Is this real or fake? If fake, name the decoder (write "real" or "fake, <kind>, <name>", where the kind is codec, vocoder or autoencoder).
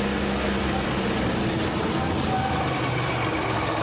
real